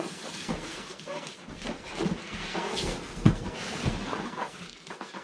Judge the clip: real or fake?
fake